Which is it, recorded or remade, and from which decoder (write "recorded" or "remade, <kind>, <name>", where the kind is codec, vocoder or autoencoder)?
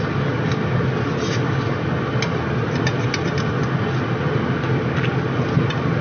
recorded